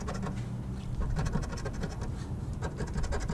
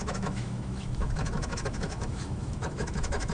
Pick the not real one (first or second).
second